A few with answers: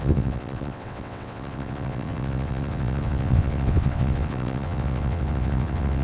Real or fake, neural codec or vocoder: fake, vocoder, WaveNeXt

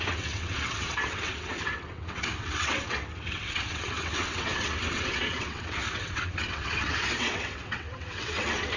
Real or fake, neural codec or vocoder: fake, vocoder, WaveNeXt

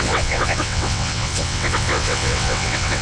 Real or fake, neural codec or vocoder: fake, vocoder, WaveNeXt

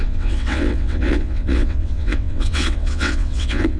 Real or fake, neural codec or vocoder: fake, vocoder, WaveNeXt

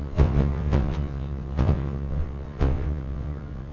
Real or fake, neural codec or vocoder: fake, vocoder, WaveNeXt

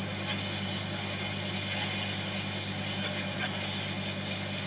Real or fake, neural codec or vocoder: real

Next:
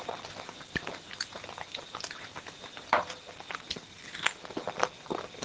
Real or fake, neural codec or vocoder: real